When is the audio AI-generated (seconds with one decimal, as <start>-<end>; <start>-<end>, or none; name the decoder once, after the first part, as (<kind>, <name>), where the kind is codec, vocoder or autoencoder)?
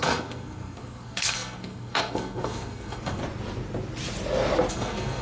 0.0-3.2 (codec, SNAC); 4.7-5.2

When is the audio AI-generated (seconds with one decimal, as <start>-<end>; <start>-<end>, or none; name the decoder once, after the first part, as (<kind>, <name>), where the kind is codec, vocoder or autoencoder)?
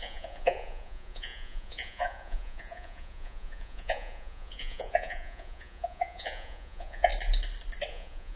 0.0-7.1 (vocoder, Vocos); 7.9-8.4